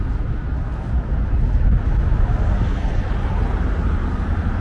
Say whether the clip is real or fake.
real